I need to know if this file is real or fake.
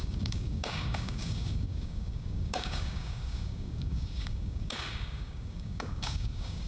fake